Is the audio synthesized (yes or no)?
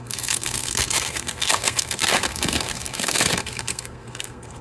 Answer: yes